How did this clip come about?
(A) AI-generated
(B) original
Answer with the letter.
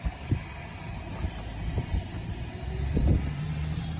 A